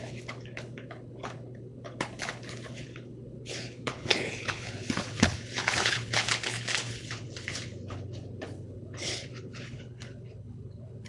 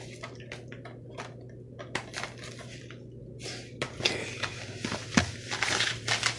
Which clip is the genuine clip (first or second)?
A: second